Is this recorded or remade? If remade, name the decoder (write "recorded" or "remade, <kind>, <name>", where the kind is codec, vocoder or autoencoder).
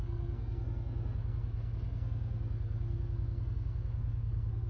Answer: remade, codec, SNAC